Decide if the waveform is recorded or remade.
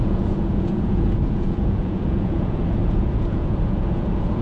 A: remade